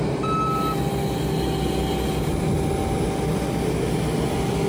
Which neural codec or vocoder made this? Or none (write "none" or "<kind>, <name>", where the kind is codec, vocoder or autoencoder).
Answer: none